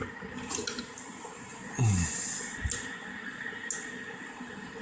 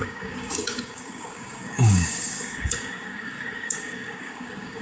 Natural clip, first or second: first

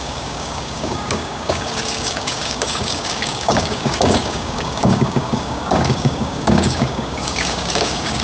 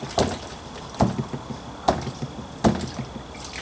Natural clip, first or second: second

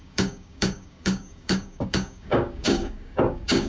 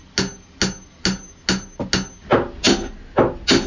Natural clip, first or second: second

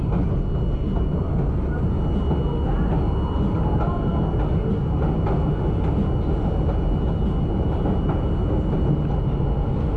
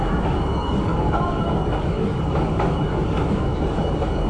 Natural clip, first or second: first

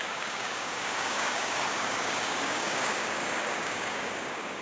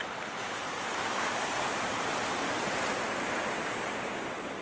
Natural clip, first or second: second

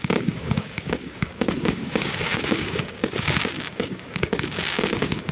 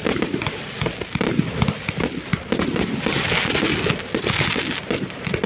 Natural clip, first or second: second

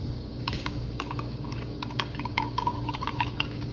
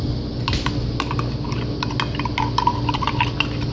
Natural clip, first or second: second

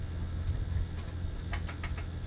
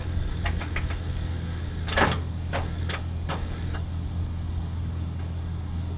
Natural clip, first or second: first